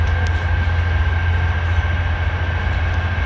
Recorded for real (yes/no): yes